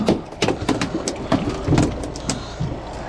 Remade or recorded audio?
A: recorded